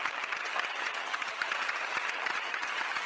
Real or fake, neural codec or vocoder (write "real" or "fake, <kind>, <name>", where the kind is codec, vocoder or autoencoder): fake, vocoder, HiFi-GAN